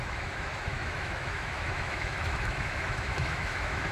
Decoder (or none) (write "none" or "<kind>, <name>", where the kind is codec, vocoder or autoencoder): autoencoder, DAC-VAE